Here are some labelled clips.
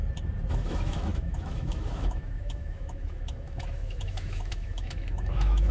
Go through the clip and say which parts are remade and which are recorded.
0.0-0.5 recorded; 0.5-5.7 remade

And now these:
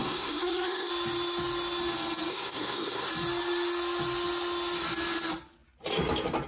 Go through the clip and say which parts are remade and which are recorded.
0.0-0.9 remade; 0.9-2.3 recorded; 2.3-3.1 remade; 3.1-6.5 recorded

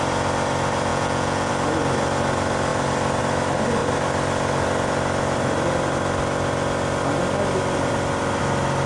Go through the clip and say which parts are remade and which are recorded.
0.0-0.9 recorded; 0.9-1.5 remade; 1.5-8.9 recorded

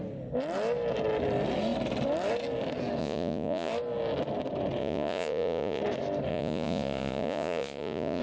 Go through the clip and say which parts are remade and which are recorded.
0.0-3.0 recorded; 3.0-3.7 remade; 3.7-4.8 recorded; 4.8-5.8 remade; 5.8-6.3 recorded; 6.3-8.2 remade

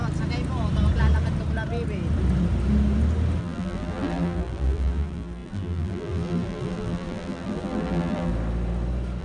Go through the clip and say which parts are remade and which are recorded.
0.0-3.4 recorded; 3.4-8.3 remade; 8.3-9.2 recorded

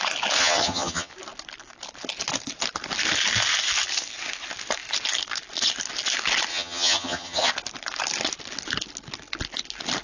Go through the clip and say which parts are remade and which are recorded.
0.0-0.4 recorded; 0.4-1.1 remade; 1.1-6.5 recorded; 6.5-7.5 remade; 7.5-10.0 recorded